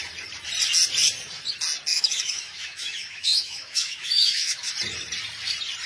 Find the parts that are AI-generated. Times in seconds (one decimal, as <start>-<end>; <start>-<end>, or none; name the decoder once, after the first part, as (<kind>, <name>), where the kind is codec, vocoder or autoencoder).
1.9-4.7 (autoencoder, DAC-VAE)